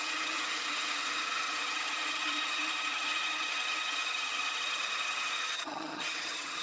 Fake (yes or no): yes